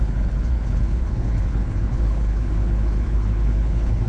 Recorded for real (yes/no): no